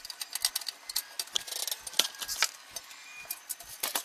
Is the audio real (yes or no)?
yes